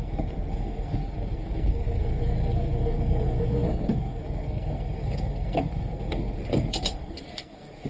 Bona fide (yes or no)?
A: no